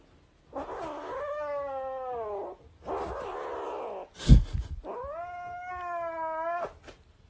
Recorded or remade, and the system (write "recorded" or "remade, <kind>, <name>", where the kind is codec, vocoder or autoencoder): recorded